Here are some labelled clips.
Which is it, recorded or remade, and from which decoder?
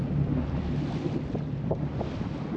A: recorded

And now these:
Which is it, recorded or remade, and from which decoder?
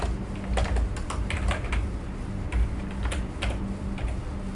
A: recorded